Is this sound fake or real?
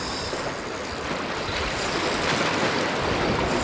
real